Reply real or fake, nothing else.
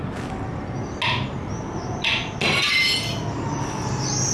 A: real